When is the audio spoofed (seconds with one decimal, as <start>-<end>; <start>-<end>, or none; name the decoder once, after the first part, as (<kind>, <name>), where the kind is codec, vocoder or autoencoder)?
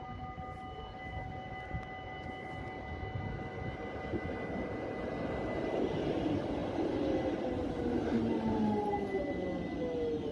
none